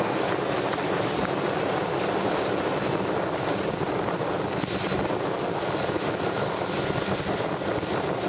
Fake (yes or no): no